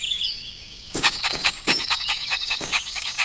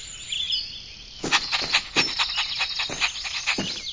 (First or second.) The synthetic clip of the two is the first